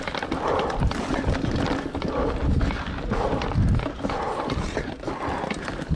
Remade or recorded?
recorded